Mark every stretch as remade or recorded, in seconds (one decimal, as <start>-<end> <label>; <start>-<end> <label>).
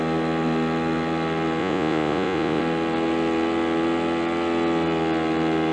0.0-1.6 recorded; 1.6-2.6 remade; 2.6-5.7 recorded